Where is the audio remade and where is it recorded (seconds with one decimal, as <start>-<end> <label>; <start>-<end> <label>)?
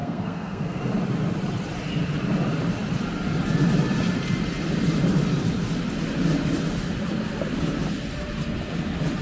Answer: 0.0-0.8 remade; 0.8-9.2 recorded